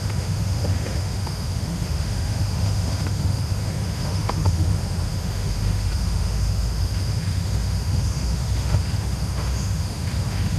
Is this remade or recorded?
remade